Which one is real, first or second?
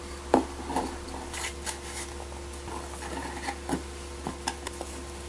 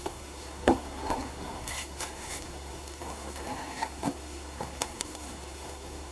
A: first